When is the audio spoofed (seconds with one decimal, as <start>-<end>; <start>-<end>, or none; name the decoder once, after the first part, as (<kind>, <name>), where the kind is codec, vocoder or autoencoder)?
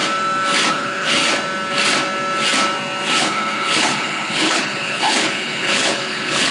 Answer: 0.7-1.2 (codec, HILCodec); 3.2-6.5